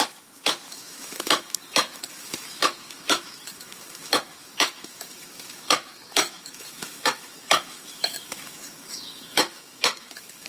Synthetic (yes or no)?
yes